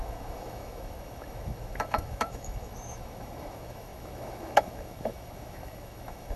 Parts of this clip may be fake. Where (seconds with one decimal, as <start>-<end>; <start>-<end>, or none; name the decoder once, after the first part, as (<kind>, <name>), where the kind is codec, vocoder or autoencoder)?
0.0-6.4 (autoencoder, DAC-VAE)